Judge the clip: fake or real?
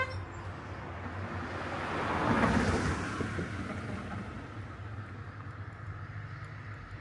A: real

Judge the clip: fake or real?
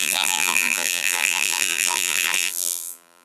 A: fake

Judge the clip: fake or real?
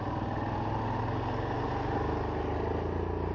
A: real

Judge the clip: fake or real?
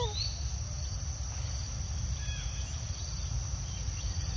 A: real